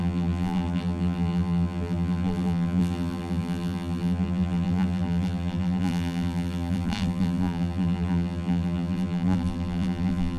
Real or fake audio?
fake